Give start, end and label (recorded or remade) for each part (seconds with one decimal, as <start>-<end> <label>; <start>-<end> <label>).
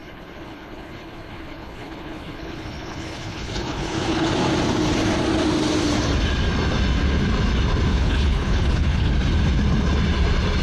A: 0.0-4.3 remade; 4.3-7.9 recorded; 7.9-9.1 remade; 9.1-10.6 recorded